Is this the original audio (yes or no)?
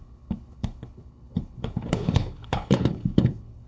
no